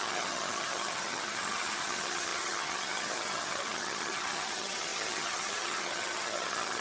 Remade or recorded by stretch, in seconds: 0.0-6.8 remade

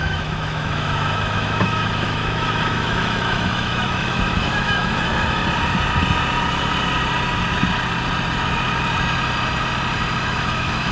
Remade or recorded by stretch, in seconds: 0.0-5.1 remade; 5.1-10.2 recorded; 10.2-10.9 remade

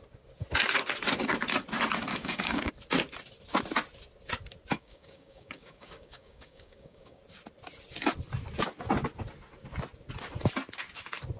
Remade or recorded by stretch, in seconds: 0.0-2.1 recorded; 2.1-2.7 remade; 2.7-4.7 recorded; 4.7-7.2 remade; 7.2-11.4 recorded

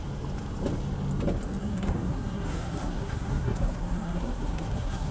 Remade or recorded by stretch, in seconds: 0.0-1.6 recorded; 1.6-5.1 remade